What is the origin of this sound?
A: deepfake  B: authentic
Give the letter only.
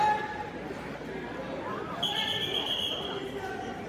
B